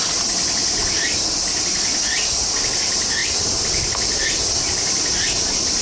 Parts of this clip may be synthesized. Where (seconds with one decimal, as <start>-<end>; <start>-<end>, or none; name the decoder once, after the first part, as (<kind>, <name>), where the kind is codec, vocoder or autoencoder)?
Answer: none